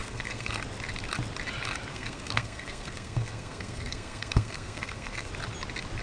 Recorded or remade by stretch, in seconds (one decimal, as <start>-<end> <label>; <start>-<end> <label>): 0.0-0.6 remade; 0.6-1.9 recorded; 1.9-5.3 remade; 5.3-6.0 recorded